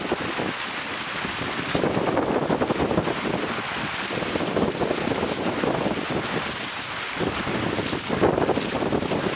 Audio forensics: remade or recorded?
recorded